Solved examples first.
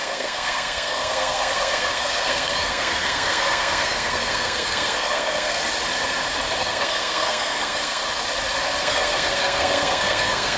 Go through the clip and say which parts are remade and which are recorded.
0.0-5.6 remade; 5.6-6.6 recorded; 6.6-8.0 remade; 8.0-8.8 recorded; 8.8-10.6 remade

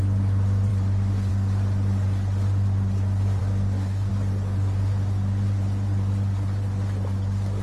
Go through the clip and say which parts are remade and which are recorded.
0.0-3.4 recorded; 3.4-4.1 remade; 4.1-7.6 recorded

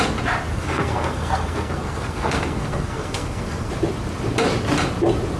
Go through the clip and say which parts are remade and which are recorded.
0.0-0.5 recorded; 0.5-3.7 remade; 3.7-5.4 recorded